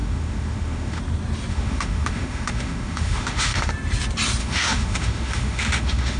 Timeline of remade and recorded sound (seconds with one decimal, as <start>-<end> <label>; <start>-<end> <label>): 0.0-1.0 remade; 1.0-1.5 recorded; 1.5-3.7 remade; 3.7-4.4 recorded; 4.4-6.2 remade